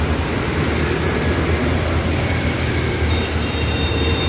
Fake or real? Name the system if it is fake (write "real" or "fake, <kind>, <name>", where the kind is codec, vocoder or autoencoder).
real